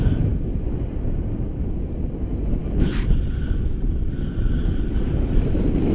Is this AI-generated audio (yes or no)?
no